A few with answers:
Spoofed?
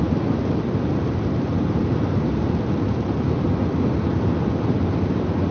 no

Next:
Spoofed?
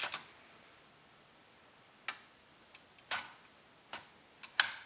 no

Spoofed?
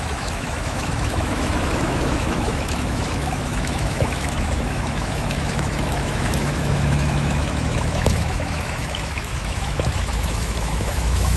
yes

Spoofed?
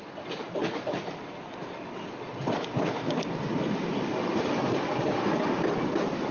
no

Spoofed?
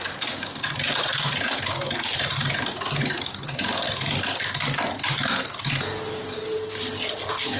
no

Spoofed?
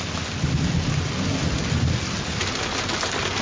no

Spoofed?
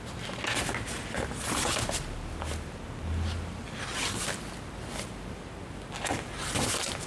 no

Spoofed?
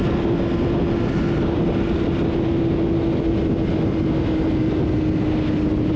no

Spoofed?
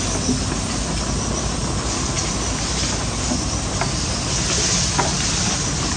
no